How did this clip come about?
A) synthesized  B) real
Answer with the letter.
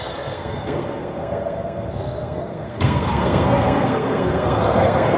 A